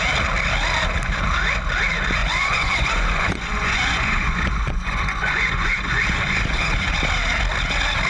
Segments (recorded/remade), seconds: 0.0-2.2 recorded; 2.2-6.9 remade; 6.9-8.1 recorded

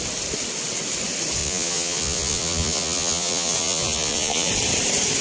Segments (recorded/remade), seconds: 0.0-1.4 recorded; 1.4-4.5 remade; 4.5-5.2 recorded

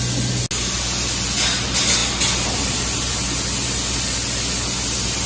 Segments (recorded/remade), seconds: 0.0-5.3 recorded

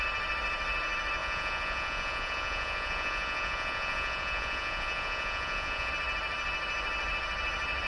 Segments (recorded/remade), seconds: 0.0-1.2 recorded; 1.2-5.9 remade; 5.9-7.9 recorded

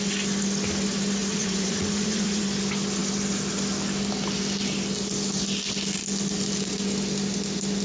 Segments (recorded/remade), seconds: 0.0-1.2 recorded; 1.2-2.4 remade; 2.4-7.8 recorded

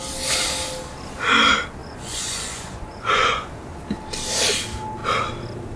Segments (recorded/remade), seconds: 0.0-1.8 recorded; 1.8-3.5 remade; 3.5-5.8 recorded

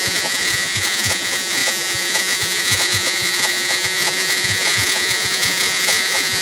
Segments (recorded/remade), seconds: 0.0-6.4 remade

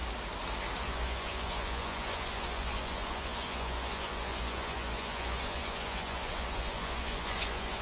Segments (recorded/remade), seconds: 0.0-0.8 recorded; 0.8-7.8 remade